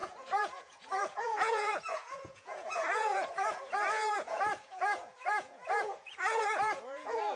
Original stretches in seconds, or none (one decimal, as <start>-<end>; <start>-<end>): none